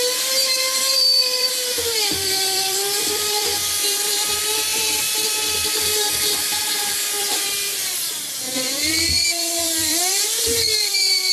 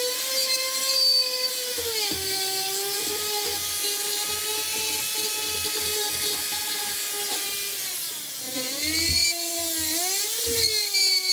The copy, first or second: first